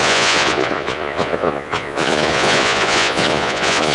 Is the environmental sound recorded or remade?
remade